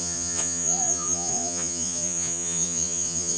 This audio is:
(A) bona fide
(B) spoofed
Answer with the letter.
B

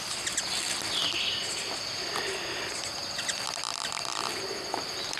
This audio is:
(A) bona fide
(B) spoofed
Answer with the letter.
A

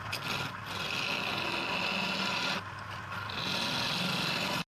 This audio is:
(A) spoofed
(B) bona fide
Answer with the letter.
B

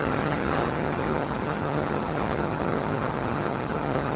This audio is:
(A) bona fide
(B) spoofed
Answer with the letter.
B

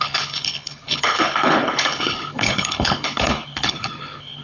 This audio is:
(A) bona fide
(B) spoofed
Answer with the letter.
B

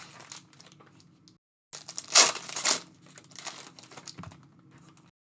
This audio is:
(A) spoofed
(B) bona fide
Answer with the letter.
B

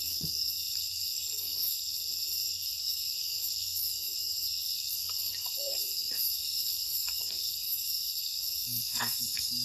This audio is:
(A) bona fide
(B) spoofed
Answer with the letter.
B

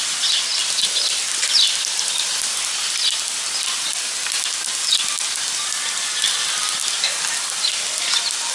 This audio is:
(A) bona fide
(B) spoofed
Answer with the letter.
A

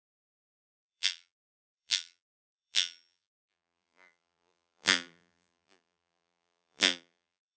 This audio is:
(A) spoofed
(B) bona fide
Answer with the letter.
A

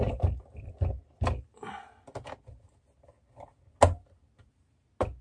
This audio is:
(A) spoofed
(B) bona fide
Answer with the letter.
B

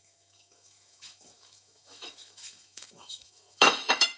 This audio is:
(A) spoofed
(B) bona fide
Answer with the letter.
A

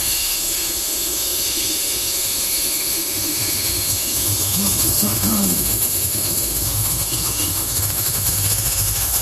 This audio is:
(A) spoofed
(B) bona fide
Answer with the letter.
A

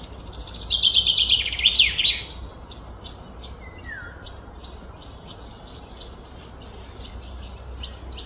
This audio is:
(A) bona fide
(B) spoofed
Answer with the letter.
A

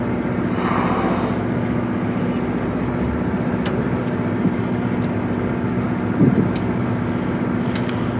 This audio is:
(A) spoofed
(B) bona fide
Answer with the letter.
B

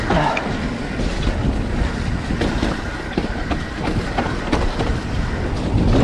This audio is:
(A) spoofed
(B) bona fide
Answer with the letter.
B